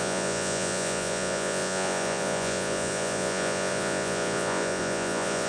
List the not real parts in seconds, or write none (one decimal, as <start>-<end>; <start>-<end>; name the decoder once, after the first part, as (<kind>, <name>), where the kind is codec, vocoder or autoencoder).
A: 0.0-5.5 (vocoder, Vocos)